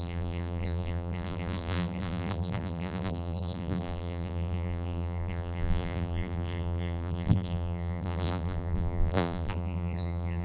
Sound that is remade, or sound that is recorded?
remade